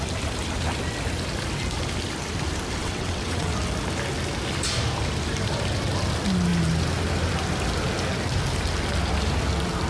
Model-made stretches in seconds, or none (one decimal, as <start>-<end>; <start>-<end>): 2.8-3.5